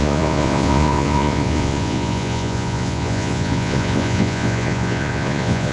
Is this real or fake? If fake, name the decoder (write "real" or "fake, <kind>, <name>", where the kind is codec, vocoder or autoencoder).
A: fake, vocoder, Vocos